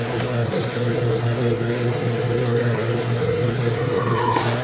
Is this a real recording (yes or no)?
no